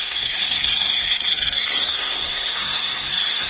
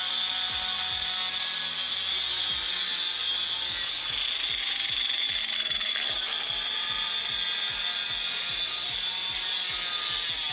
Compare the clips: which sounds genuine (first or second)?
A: second